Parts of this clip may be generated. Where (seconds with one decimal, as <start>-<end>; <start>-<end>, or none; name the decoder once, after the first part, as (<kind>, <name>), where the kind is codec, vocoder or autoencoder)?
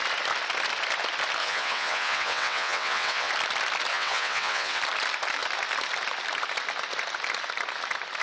1.4-3.3 (vocoder, WaveNeXt); 3.9-4.8